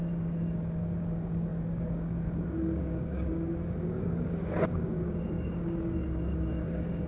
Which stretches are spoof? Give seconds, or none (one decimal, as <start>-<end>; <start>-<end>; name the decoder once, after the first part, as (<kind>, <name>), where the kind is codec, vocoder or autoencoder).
0.0-7.1 (codec, DAC)